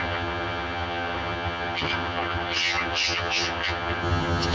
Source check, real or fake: fake